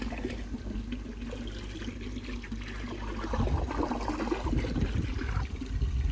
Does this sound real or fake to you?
real